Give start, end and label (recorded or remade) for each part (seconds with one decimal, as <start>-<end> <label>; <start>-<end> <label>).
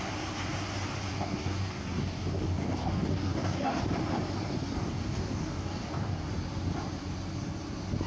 0.0-1.1 recorded; 1.1-3.8 remade; 3.8-4.8 recorded; 4.8-6.3 remade; 6.3-8.1 recorded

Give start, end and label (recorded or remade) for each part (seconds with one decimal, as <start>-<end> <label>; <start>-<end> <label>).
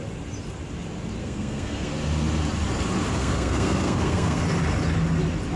0.0-1.2 recorded; 1.2-1.9 remade; 1.9-3.2 recorded; 3.2-4.4 remade; 4.4-5.6 recorded